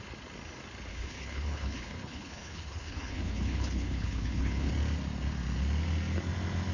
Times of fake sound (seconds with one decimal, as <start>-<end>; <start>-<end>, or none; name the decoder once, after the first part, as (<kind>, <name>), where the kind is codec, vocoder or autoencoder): 0.9-4.7 (codec, HILCodec)